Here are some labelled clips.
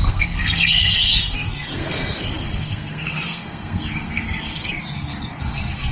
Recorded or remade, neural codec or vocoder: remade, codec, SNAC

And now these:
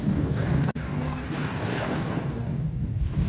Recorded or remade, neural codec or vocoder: remade, codec, DAC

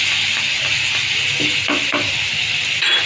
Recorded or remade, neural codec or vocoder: recorded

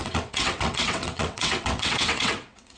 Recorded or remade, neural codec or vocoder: remade, vocoder, WaveNeXt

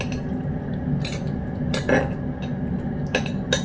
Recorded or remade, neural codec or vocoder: recorded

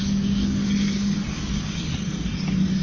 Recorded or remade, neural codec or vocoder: remade, codec, DAC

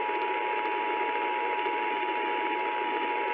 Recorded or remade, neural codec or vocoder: recorded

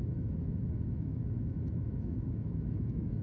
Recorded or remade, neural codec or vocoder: remade, autoencoder, DAC-VAE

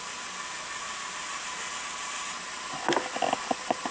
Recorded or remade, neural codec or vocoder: recorded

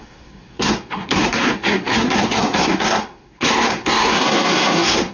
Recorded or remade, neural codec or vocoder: remade, codec, SNAC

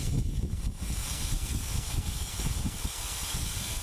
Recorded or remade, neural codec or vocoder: remade, codec, SNAC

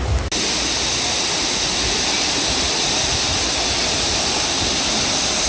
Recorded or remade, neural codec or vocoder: recorded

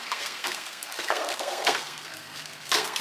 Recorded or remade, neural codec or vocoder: remade, codec, SNAC